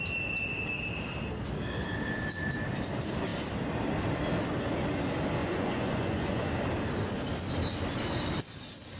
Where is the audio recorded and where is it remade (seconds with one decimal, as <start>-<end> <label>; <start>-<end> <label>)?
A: 0.0-5.4 recorded; 5.4-6.5 remade; 6.5-9.0 recorded